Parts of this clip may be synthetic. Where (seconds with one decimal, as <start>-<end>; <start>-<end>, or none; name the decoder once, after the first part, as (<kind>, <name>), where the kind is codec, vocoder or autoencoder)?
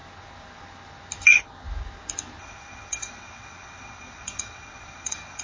2.4-5.4 (vocoder, WaveNeXt)